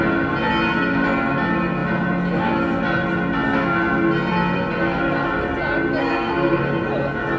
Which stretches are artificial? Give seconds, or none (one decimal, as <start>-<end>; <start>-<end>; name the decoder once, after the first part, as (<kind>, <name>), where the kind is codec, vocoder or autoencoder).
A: 6.0-6.6 (codec, SNAC)